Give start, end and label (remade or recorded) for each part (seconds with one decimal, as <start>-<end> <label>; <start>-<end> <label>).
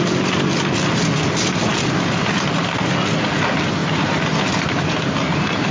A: 0.0-5.7 recorded